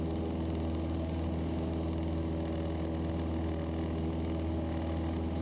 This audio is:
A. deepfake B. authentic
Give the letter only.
B